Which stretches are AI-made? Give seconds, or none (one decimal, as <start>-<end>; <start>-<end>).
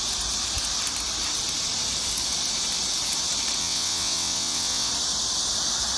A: 3.6-4.9